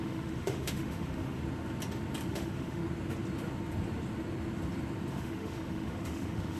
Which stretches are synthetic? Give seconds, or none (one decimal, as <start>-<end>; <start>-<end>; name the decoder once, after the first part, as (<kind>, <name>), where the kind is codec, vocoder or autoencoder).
0.0-1.4 (autoencoder, DAC-VAE); 2.3-2.8; 5.1-6.6